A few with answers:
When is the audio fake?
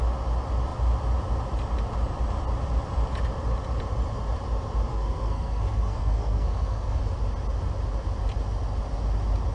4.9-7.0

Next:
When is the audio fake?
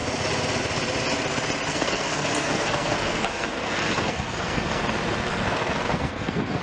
1.7-4.8; 5.3-6.6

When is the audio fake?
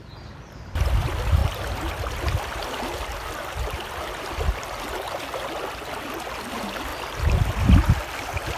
none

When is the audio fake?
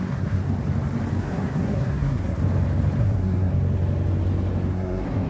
0.0-0.4; 1.2-2.4; 3.0-3.5; 4.7-5.3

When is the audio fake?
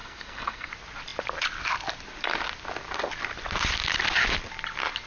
0.0-0.7